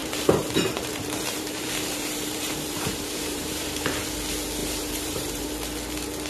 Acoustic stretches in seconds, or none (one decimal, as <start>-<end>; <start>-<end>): 3.8-4.6; 5.5-6.3